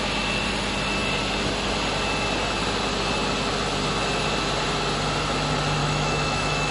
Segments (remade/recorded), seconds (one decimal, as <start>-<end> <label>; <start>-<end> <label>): 0.0-5.8 recorded; 5.8-6.7 remade